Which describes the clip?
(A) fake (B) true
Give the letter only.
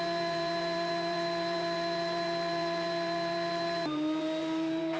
A